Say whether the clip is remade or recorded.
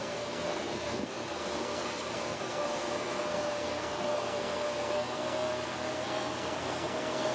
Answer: remade